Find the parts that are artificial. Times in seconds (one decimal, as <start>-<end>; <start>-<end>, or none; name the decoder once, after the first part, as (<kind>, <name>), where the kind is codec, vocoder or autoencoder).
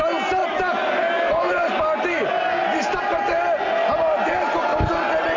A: none